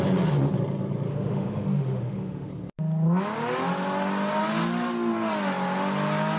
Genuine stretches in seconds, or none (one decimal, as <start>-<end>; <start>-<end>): 0.0-1.1; 2.5-6.4

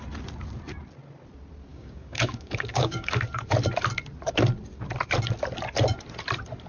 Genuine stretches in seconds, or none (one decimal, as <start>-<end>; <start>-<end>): 0.0-1.7; 3.2-6.7

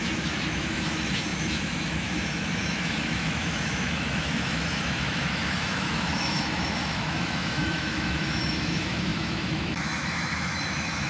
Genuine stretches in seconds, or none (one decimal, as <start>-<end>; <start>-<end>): none

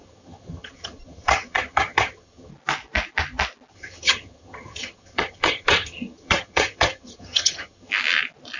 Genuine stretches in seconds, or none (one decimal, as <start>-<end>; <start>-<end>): 2.5-3.7; 7.9-8.6

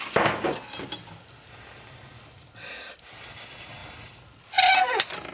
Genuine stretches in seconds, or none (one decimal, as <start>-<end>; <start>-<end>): 0.0-5.3